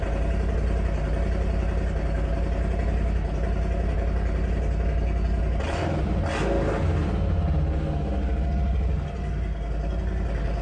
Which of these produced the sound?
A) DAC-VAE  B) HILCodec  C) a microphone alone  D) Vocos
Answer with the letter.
C